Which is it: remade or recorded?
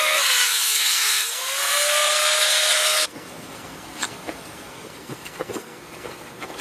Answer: remade